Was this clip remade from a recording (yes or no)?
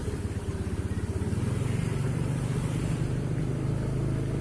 no